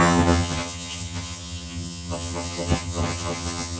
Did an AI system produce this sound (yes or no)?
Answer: yes